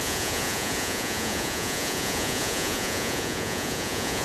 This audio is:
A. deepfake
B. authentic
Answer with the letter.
A